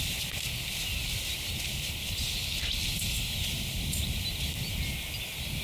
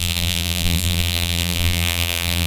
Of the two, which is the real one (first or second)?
first